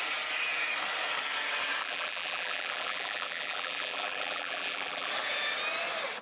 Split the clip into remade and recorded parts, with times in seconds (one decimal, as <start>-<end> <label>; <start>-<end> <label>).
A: 0.0-1.8 recorded; 1.8-5.1 remade; 5.1-6.2 recorded